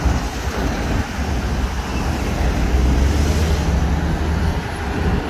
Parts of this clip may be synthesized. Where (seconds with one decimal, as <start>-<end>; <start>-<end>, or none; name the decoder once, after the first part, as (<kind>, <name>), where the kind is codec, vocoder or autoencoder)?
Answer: none